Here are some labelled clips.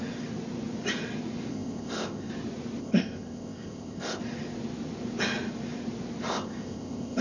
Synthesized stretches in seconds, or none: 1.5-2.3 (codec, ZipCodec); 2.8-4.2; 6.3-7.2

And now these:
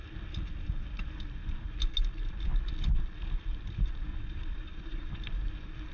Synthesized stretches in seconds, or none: 4.1-5.2 (vocoder, Vocos)

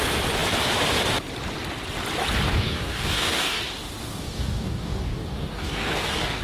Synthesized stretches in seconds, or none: 2.5-3.6 (codec, DAC); 4.0-6.4

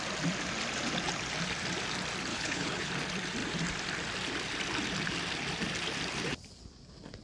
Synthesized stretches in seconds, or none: 2.3-2.9 (codec, HILCodec)